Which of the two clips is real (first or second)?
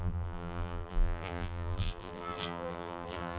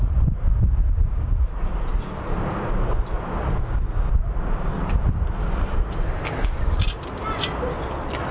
second